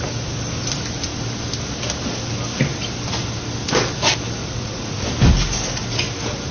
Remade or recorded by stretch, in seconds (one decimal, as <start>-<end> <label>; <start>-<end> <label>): 0.0-4.4 recorded; 4.4-5.0 remade; 5.0-6.5 recorded